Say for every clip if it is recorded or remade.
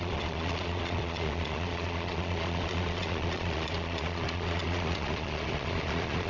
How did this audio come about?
remade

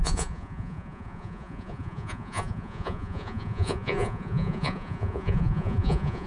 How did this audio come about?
remade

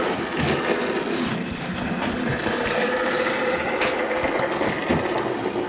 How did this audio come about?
recorded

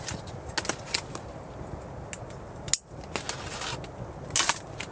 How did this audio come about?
recorded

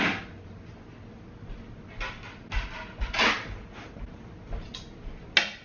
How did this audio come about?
recorded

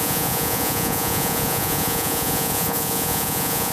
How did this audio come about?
remade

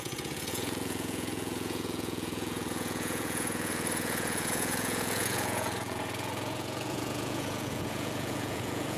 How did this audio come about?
remade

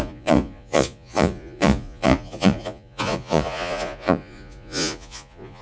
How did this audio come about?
remade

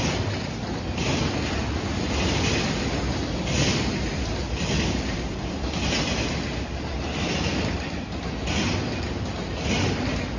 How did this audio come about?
recorded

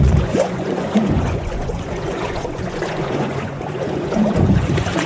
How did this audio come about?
remade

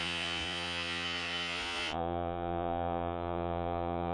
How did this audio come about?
remade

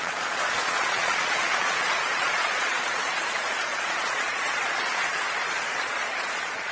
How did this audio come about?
remade